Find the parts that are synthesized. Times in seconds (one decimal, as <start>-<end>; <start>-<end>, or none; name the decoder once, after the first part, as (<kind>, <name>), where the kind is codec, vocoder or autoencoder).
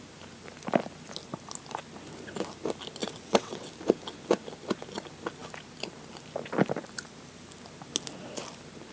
3.0-3.7 (vocoder, WaveNeXt)